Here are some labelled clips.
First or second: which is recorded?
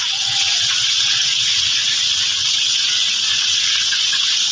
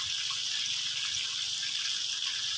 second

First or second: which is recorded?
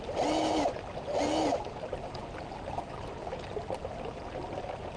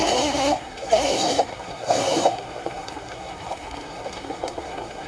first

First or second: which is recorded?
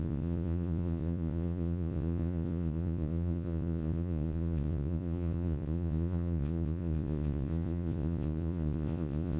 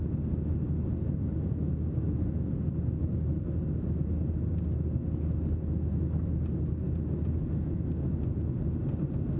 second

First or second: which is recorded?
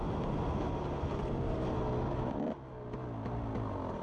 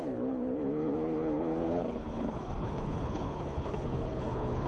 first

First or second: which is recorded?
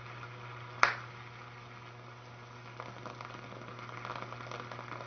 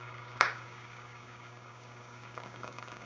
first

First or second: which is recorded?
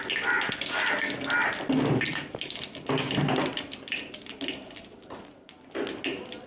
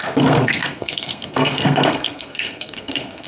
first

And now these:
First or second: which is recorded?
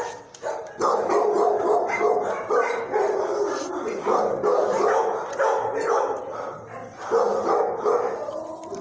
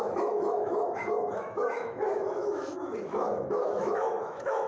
first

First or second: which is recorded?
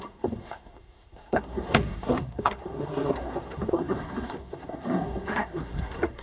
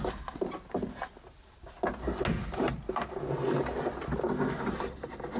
second